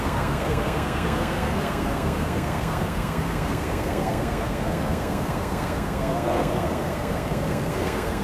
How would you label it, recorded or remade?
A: remade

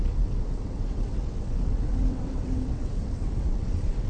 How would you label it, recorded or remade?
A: remade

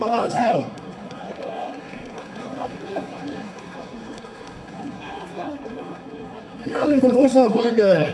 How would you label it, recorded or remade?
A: remade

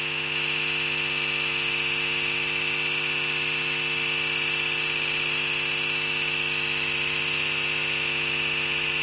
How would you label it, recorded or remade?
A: remade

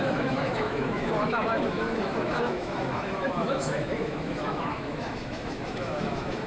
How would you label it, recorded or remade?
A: remade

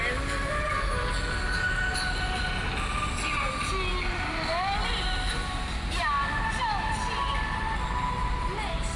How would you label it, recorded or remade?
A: recorded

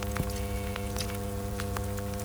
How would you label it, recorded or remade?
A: remade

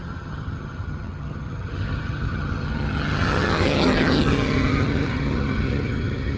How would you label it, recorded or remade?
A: remade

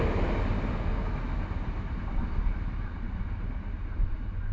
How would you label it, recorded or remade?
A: recorded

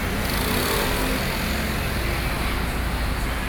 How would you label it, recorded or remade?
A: recorded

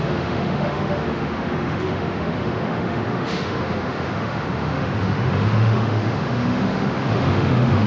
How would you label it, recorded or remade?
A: remade